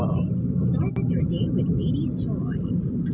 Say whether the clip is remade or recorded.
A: recorded